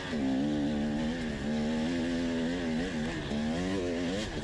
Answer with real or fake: real